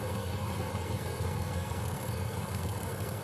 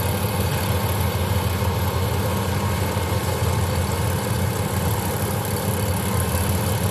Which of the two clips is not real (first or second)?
first